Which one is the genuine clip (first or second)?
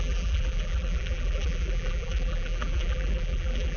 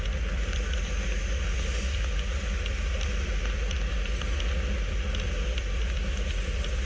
second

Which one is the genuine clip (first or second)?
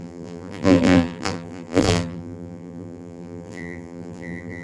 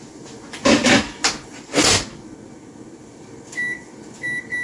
second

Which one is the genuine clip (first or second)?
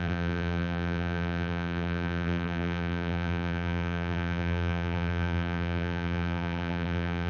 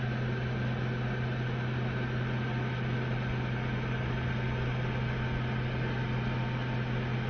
second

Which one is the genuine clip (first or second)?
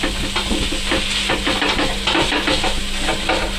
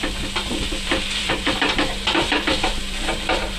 first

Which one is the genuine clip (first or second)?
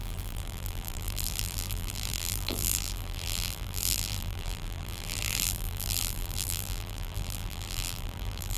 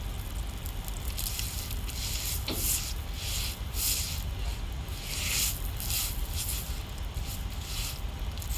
second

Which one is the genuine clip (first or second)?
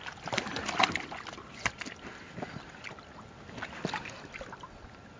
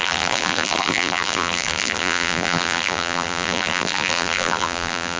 first